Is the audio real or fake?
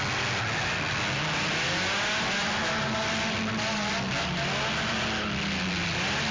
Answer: real